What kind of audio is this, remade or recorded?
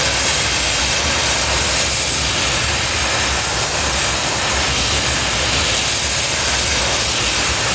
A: recorded